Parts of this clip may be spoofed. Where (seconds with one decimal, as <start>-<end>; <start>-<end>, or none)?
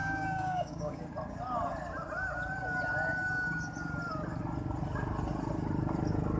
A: 0.0-1.0